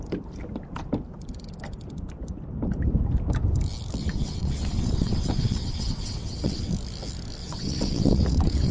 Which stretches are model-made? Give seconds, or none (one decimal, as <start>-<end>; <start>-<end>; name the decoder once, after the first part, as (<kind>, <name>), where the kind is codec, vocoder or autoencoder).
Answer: 4.0-6.7 (vocoder, WaveNeXt); 7.4-8.7